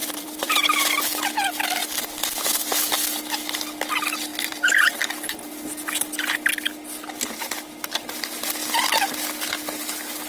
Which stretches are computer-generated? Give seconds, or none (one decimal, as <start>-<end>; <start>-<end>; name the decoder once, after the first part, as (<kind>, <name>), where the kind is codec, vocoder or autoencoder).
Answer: 0.0-0.6 (vocoder, BigVGAN v2); 4.3-5.0